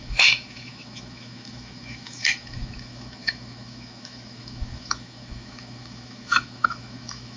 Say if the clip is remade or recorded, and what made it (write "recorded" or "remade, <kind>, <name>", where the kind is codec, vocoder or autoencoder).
remade, autoencoder, DAC-VAE